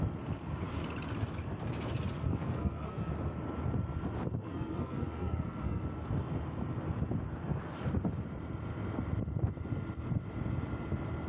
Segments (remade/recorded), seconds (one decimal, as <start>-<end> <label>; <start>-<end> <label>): 0.0-2.3 recorded; 2.3-3.1 remade; 3.1-4.4 recorded; 4.4-5.8 remade; 5.8-11.3 recorded